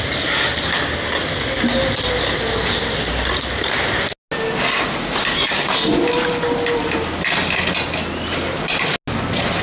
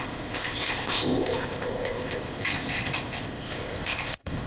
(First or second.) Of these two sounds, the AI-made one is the second